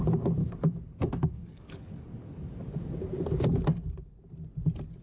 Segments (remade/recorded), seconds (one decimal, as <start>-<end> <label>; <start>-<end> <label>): 0.0-0.4 remade; 0.4-1.0 recorded; 1.0-3.0 remade; 3.0-5.0 recorded